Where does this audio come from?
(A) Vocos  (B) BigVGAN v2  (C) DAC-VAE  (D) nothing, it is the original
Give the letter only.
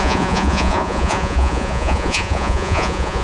A